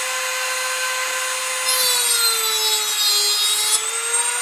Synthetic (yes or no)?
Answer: no